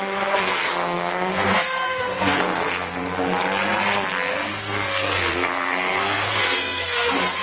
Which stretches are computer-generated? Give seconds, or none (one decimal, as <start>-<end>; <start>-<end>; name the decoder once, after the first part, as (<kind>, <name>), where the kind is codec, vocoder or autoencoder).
0.0-3.0 (codec, SNAC); 4.3-7.4